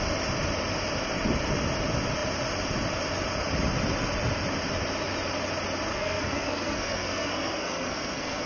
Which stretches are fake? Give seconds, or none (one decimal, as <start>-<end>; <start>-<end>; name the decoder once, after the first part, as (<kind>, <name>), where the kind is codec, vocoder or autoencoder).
5.9-8.5 (codec, SNAC)